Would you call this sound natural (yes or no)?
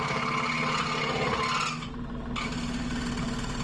yes